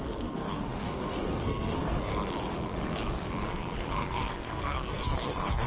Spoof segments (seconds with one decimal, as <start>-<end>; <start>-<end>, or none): 0.0-2.1; 3.5-5.7